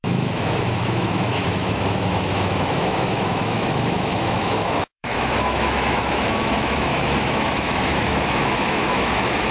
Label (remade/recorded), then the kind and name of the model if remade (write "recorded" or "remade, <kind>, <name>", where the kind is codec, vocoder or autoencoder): remade, autoencoder, DAC-VAE